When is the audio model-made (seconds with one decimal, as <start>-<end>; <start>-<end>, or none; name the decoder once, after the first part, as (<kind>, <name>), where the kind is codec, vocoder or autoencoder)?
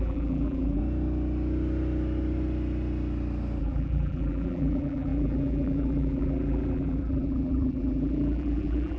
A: 0.0-0.8 (vocoder, BigVGAN v2); 3.6-9.0